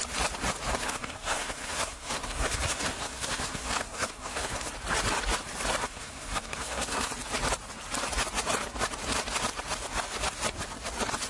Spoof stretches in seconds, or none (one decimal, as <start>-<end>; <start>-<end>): 0.7-4.7; 5.8-7.1